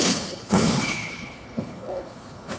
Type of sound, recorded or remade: remade